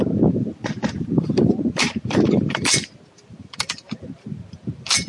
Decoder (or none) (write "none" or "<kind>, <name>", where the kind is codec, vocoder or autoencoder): vocoder, BigVGAN v2